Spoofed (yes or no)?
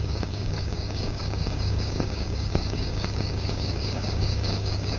yes